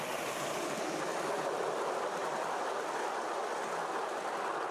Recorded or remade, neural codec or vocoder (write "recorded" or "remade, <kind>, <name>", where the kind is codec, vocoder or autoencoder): recorded